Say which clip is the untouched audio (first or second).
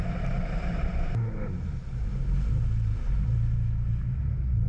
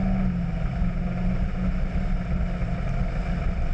second